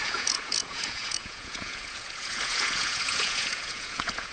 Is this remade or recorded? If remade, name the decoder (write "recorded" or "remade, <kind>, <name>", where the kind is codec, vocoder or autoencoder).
remade, vocoder, Vocos